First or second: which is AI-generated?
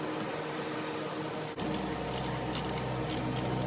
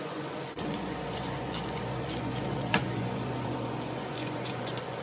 second